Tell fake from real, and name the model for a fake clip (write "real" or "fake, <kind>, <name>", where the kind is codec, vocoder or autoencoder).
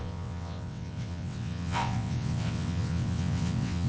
fake, vocoder, WaveNeXt